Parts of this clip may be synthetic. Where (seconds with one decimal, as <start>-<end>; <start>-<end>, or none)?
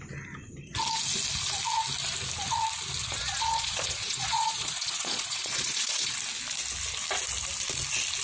3.0-6.1